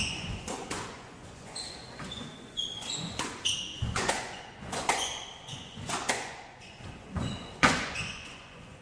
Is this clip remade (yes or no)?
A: yes